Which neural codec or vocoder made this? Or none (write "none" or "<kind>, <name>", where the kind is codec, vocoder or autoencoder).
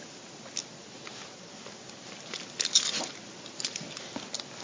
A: none